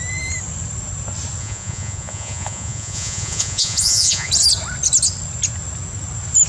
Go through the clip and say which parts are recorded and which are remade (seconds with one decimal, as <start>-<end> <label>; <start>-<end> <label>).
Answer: 0.0-1.4 recorded; 1.4-4.3 remade; 4.3-6.5 recorded